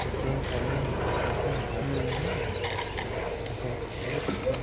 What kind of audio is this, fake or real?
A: real